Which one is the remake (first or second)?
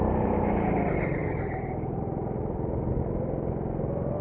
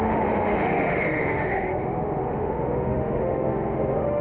second